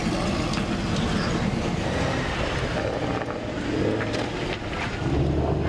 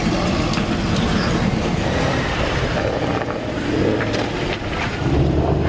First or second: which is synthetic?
second